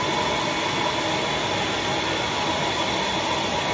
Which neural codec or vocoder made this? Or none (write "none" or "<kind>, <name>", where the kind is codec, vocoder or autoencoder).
none